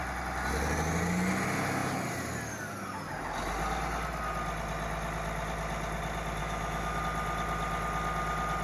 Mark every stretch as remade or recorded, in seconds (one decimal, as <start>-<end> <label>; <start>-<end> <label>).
0.0-6.4 recorded; 6.4-7.0 remade; 7.0-8.6 recorded